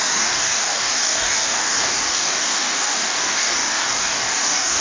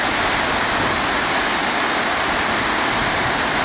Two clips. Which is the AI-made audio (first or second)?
first